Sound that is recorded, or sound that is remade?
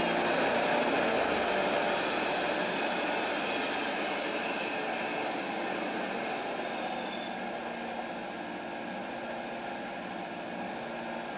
recorded